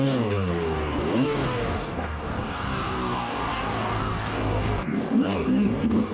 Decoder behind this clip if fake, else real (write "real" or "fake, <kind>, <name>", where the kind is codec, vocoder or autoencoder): fake, codec, DAC